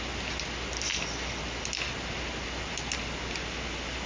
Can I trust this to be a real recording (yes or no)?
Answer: yes